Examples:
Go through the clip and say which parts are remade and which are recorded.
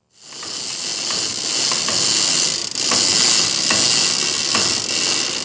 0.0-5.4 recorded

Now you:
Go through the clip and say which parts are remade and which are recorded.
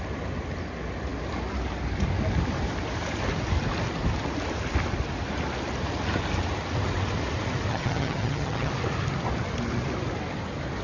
0.0-7.7 recorded; 7.7-8.7 remade; 8.7-10.8 recorded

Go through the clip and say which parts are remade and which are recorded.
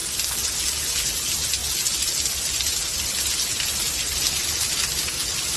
0.0-5.6 recorded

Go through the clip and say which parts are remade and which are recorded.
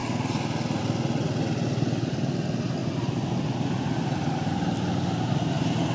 0.0-5.9 recorded